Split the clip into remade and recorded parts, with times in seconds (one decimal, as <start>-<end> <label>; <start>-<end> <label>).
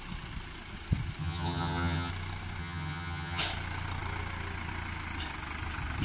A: 0.0-1.2 recorded; 1.2-2.1 remade; 2.1-2.6 recorded; 2.6-3.4 remade; 3.4-6.0 recorded